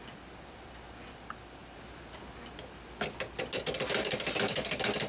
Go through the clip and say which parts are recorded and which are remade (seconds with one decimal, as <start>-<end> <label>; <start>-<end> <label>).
0.0-5.1 recorded